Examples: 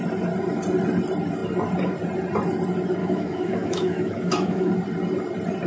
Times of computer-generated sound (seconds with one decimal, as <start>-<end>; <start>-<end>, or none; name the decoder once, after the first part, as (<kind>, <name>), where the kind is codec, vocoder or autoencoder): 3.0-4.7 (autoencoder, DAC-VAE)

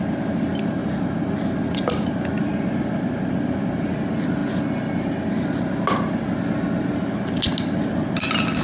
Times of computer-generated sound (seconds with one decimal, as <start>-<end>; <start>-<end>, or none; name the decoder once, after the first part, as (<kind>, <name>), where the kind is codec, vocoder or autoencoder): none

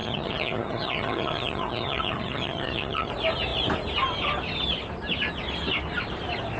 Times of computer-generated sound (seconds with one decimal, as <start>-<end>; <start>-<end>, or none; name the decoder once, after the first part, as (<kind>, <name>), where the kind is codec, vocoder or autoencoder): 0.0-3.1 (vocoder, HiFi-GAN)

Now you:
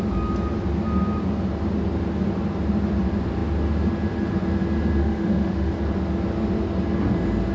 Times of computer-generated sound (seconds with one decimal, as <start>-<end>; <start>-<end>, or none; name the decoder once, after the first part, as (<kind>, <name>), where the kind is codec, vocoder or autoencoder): 5.0-5.7 (autoencoder, DAC-VAE)

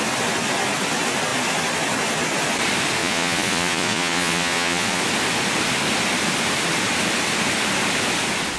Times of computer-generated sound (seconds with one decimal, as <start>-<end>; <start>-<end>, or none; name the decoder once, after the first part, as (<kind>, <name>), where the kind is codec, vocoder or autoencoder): 3.0-5.0 (vocoder, Vocos)

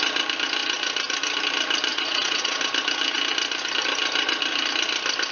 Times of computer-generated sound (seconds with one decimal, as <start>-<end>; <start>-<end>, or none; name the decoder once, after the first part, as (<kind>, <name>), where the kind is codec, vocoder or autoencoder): 1.9-2.6 (vocoder, Vocos)

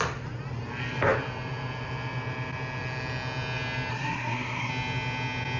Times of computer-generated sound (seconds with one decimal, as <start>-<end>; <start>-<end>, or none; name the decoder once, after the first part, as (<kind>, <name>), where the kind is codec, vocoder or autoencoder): 3.9-4.7 (codec, SNAC)

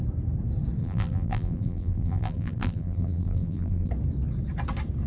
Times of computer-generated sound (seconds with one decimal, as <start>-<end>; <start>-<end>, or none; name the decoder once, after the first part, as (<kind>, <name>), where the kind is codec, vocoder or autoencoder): 0.8-3.9 (vocoder, BigVGAN v2)